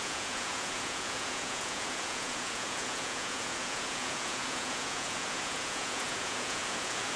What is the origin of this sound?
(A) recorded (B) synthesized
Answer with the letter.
B